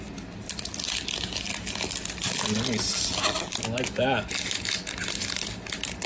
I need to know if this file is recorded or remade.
recorded